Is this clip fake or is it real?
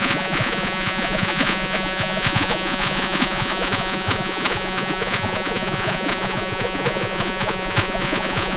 fake